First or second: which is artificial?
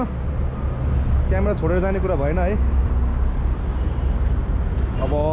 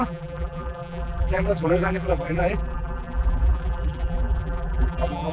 second